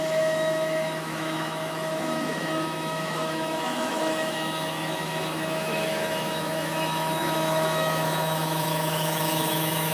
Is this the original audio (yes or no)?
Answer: no